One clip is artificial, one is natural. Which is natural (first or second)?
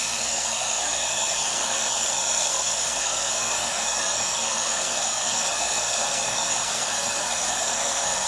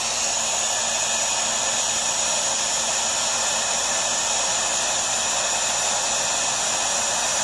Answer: second